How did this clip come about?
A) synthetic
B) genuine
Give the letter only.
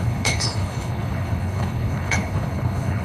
A